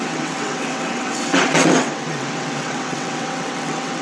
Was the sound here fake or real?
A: fake